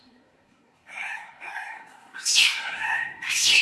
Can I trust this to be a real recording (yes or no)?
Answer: no